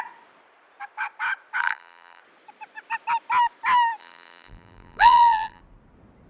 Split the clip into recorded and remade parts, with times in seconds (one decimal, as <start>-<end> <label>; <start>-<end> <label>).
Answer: 0.0-1.6 recorded; 1.6-2.2 remade; 2.2-4.0 recorded; 4.0-5.6 remade; 5.6-6.3 recorded